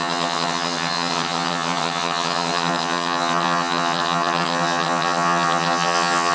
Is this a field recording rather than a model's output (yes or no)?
no